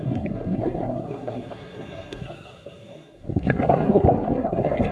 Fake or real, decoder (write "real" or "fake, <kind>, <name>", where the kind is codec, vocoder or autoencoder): fake, codec, SNAC